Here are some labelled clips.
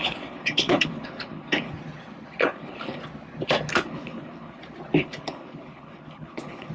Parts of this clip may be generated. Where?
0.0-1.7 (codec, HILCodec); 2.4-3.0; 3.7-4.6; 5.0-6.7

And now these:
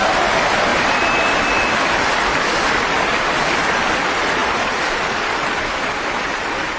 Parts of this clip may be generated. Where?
0.7-3.2 (vocoder, BigVGAN v2); 4.4-6.8

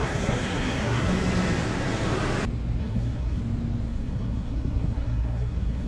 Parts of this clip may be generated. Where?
0.0-1.1 (codec, SNAC); 2.8-3.4; 3.9-5.9

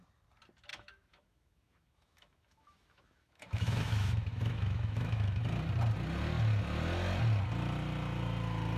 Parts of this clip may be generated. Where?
0.7-5.4 (autoencoder, DAC-VAE)